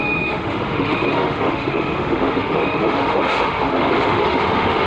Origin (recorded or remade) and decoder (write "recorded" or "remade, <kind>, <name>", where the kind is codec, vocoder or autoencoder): remade, autoencoder, DAC-VAE